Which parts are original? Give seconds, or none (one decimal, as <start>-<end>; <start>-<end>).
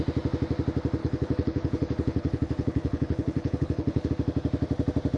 0.0-1.0; 4.1-5.2